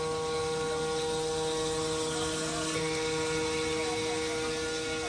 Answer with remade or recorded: recorded